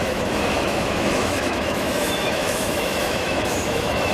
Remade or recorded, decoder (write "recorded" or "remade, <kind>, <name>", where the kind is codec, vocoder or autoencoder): remade, autoencoder, DAC-VAE